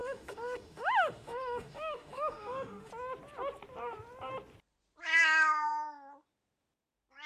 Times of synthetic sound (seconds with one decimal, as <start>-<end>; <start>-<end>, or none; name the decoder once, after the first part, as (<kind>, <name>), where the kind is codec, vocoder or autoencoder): 0.0-2.9 (autoencoder, DAC-VAE)